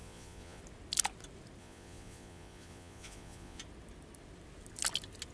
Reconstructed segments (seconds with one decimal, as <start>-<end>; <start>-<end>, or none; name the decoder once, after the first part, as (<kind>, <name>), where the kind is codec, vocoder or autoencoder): 0.0-0.6 (vocoder, Vocos); 1.6-3.6